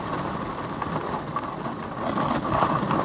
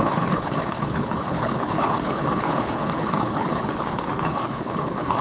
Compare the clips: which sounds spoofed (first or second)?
second